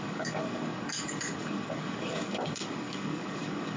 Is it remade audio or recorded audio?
remade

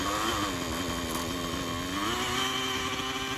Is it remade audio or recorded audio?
recorded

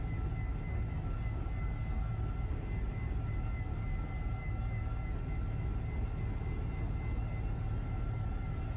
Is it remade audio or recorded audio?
recorded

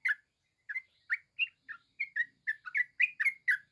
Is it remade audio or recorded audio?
recorded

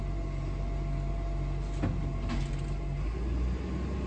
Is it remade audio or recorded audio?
recorded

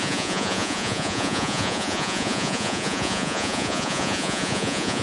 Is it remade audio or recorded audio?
remade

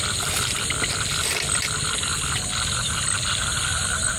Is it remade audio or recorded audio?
recorded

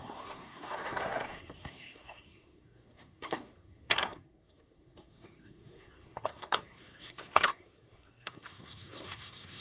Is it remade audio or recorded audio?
remade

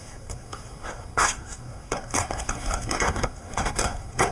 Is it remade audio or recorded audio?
remade